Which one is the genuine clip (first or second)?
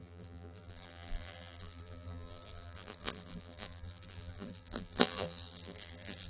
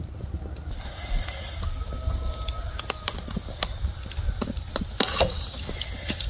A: second